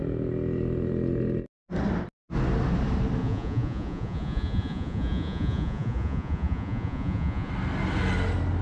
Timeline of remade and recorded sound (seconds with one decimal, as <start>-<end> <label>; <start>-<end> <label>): 0.0-3.2 recorded; 3.2-7.5 remade; 7.5-8.6 recorded

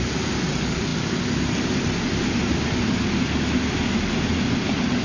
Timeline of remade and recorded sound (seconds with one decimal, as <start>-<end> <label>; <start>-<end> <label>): 0.0-5.0 recorded

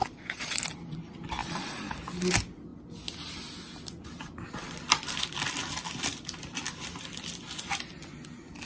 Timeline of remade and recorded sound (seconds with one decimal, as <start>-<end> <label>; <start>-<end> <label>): 0.0-0.6 remade; 0.6-1.4 recorded; 1.4-1.9 remade; 1.9-8.7 recorded

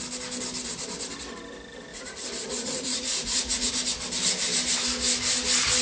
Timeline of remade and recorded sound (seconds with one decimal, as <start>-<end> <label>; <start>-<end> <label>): 0.0-1.9 recorded; 1.9-3.7 remade; 3.7-5.8 recorded

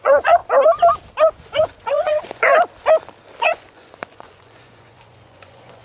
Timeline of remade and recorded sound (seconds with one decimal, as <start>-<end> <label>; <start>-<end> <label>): 0.0-0.4 remade; 0.4-1.3 recorded; 1.3-2.5 remade; 2.5-3.4 recorded; 3.4-5.8 remade

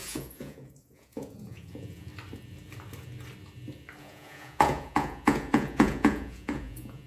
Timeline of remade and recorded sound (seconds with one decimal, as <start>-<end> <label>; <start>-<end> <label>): 0.0-2.1 remade; 2.1-4.0 recorded; 4.0-7.1 remade

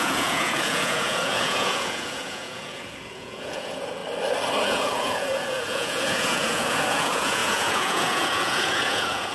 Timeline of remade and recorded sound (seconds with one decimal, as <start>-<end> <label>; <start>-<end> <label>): 0.0-4.0 remade; 4.0-4.6 recorded; 4.6-9.3 remade